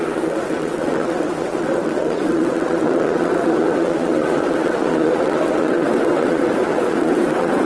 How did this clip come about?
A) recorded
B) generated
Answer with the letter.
B